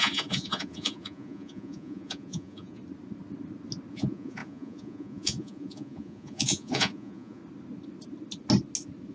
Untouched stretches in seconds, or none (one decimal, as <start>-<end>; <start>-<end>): 2.8-3.9; 7.4-9.1